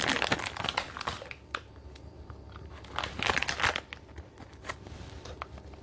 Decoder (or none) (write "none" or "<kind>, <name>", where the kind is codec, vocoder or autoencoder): none